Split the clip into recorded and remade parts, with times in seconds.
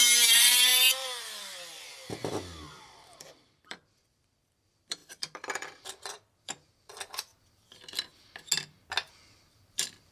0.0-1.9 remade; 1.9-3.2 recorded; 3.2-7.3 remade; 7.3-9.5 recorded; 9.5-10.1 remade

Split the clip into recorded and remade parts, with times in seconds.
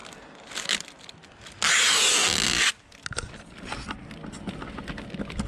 0.0-5.5 recorded